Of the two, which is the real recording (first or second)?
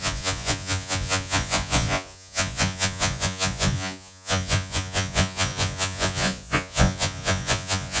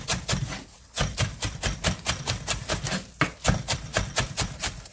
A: second